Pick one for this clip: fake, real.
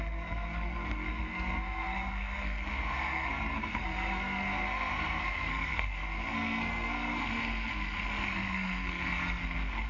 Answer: fake